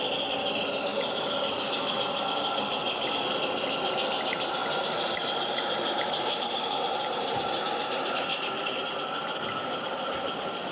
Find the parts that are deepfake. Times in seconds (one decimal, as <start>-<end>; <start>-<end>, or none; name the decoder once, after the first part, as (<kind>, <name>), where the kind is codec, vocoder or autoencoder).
0.9-2.2 (vocoder, BigVGAN v2); 2.8-3.4; 4.6-8.1; 9.2-10.7